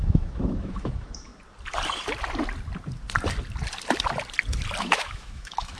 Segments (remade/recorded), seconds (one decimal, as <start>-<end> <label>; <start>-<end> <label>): 0.0-1.3 remade; 1.3-4.8 recorded; 4.8-5.8 remade